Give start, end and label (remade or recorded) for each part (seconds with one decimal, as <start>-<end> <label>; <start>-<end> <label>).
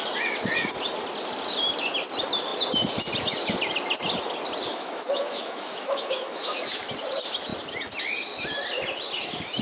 0.0-4.7 recorded; 4.7-6.8 remade; 6.8-9.6 recorded